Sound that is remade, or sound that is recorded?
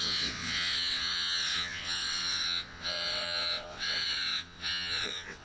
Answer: remade